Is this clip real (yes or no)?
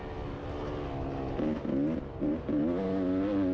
yes